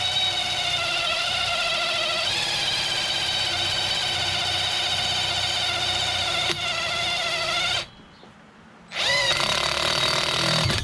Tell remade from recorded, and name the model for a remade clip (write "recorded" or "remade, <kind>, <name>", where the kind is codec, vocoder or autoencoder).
recorded